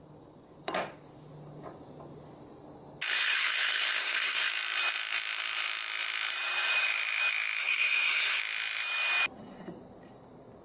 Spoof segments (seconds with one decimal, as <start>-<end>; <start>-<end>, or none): 3.1-4.5; 7.6-8.4